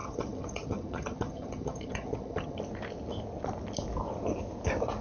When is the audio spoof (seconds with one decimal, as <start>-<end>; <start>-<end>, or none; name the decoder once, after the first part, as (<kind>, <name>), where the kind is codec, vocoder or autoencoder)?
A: 0.0-2.6 (vocoder, HiFi-GAN)